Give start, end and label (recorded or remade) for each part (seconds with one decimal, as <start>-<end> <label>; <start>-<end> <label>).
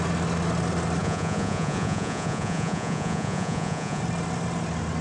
0.0-1.0 recorded; 1.0-4.0 remade; 4.0-5.0 recorded